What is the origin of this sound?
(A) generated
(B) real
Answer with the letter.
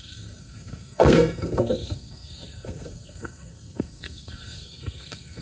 A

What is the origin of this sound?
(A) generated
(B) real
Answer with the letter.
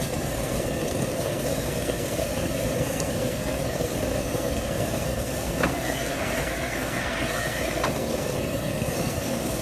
A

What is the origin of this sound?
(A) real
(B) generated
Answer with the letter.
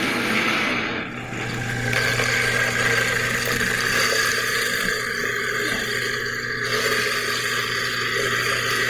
A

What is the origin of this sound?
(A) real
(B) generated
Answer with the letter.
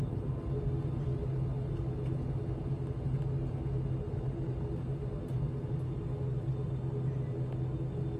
A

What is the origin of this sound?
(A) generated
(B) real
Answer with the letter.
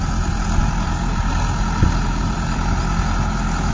B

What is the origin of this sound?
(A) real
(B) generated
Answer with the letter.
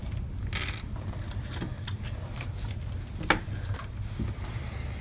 A